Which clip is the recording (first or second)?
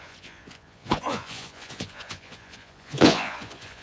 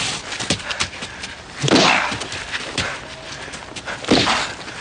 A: second